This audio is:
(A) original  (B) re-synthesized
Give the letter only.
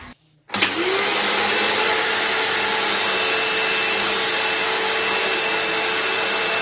A